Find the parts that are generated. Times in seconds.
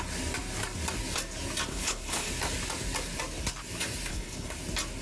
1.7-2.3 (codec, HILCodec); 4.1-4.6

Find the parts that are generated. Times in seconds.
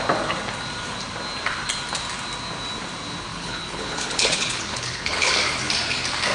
3.3-5.3 (codec, HILCodec)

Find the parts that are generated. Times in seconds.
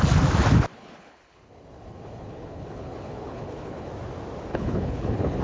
0.7-3.9 (codec, HILCodec); 4.5-5.4